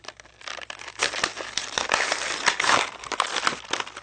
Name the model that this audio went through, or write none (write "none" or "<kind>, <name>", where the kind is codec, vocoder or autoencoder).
none